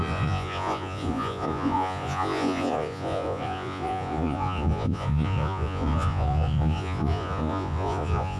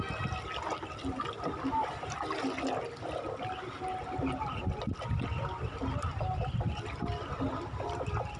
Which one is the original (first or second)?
second